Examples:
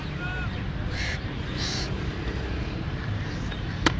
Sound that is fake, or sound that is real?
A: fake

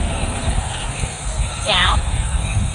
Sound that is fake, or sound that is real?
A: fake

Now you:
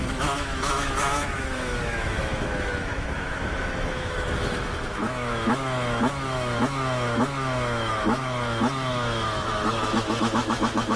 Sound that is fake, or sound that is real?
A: fake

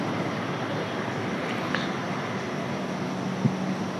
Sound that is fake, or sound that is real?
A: real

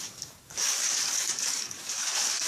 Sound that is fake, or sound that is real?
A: fake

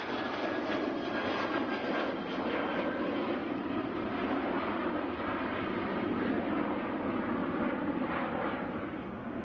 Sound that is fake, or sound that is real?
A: real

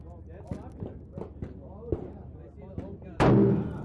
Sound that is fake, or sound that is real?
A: real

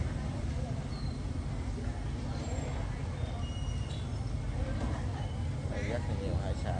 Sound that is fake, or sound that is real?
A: real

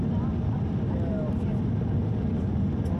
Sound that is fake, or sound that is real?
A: real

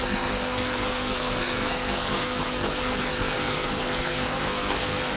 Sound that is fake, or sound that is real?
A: fake